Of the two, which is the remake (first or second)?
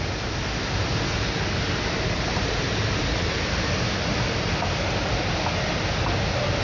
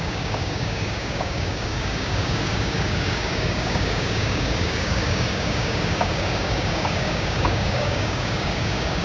second